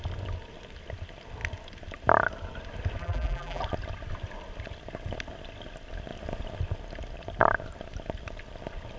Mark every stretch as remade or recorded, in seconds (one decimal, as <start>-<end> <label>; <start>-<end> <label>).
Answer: 0.0-3.0 recorded; 3.0-3.6 remade; 3.6-9.0 recorded